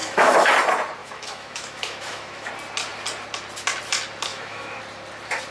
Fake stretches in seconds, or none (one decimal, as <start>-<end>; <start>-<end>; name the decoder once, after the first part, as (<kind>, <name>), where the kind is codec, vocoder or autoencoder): 0.0-0.5 (autoencoder, DAC-VAE); 1.0-2.5; 4.3-4.8